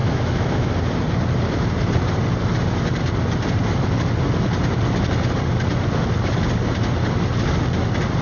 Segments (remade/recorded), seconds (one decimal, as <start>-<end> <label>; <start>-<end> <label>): 0.0-0.7 remade; 0.7-8.2 recorded